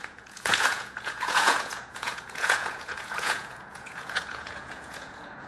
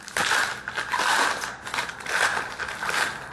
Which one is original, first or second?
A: second